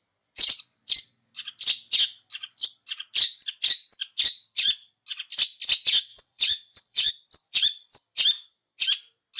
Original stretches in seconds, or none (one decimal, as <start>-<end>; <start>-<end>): 0.0-6.1; 7.1-9.4